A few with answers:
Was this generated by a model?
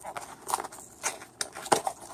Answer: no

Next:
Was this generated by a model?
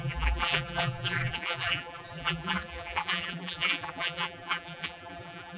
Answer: yes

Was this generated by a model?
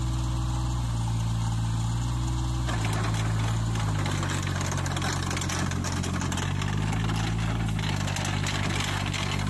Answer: no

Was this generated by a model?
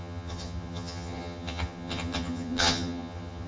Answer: yes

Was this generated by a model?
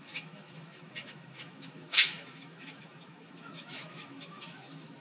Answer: yes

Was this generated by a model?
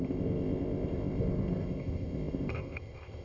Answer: yes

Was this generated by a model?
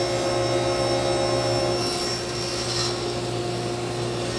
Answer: no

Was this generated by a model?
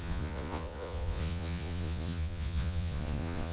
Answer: yes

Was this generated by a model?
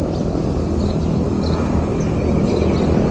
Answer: no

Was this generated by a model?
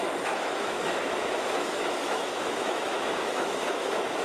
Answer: yes